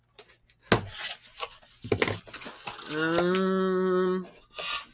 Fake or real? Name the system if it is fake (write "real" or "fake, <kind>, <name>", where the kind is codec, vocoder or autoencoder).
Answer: real